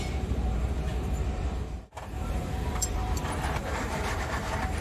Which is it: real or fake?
fake